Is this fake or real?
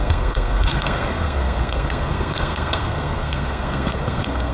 fake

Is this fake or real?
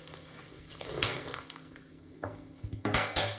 fake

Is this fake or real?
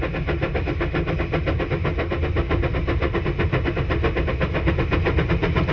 real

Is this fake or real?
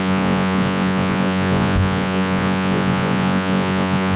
fake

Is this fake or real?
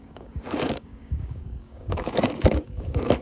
fake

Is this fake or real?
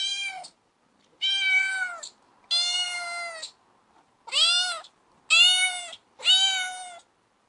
real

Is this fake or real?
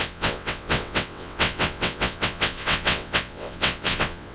fake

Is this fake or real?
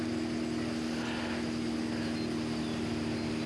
real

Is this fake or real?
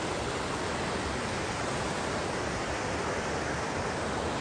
real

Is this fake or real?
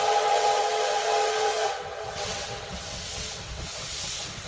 fake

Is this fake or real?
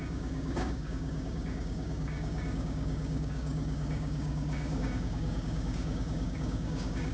fake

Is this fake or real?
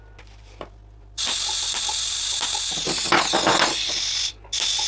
real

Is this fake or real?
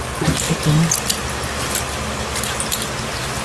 real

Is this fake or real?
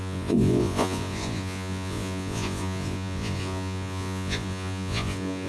fake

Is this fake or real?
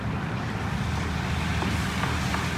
real